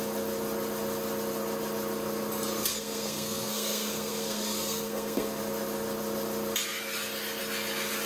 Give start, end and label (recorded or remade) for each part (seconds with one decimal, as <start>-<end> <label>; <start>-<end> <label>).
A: 0.0-2.6 recorded; 2.6-5.4 remade; 5.4-8.1 recorded